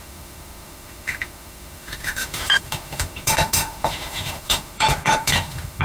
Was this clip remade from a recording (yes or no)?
yes